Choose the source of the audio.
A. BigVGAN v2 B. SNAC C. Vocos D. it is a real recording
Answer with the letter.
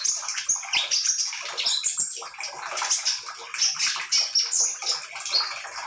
D